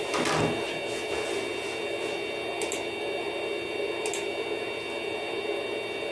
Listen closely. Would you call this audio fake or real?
real